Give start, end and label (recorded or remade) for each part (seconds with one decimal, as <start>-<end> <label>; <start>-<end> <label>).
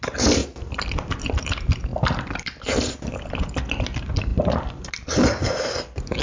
0.0-0.4 recorded; 0.4-1.3 remade; 1.3-4.3 recorded; 4.3-5.1 remade; 5.1-6.2 recorded